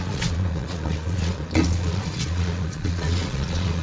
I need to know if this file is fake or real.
fake